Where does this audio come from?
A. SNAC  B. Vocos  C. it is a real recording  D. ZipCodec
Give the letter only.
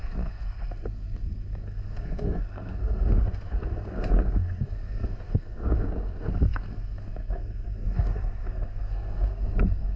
A